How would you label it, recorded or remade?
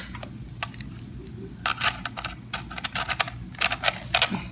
recorded